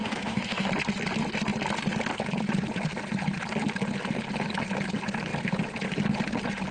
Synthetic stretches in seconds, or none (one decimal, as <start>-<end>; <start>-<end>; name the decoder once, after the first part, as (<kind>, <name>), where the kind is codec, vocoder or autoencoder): 0.0-0.7 (autoencoder, DAC-VAE)